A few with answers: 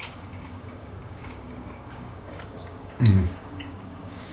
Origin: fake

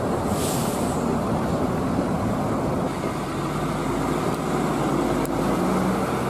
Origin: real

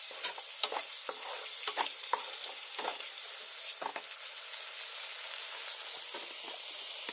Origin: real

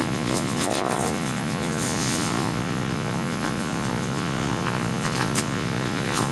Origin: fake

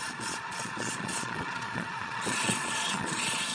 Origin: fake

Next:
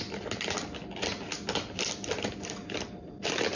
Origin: real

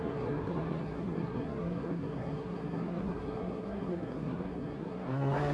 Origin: fake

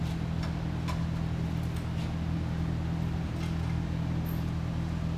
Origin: real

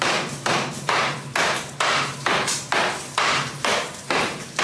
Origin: fake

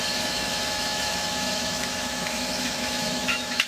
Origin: fake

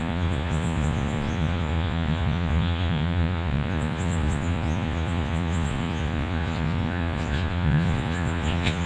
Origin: fake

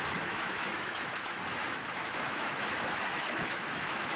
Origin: fake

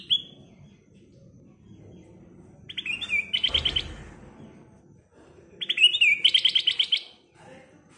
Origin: real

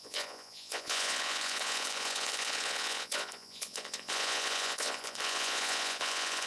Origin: fake